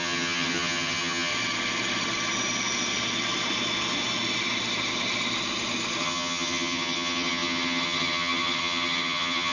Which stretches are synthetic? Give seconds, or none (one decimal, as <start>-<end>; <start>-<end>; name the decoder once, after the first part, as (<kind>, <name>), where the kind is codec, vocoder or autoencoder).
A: 0.0-1.3 (vocoder, HiFi-GAN); 6.0-9.5